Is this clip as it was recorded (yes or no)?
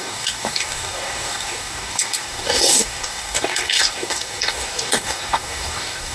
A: no